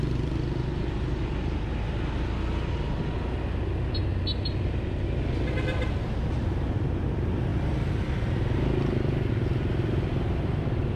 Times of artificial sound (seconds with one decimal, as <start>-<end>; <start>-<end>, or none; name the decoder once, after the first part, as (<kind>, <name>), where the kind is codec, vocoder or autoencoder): none